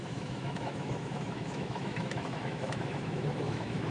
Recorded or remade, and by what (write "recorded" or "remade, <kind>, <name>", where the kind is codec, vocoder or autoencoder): remade, autoencoder, DAC-VAE